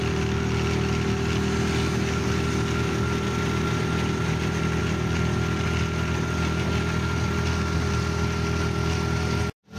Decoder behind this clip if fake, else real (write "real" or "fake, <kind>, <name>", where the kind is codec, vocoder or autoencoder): real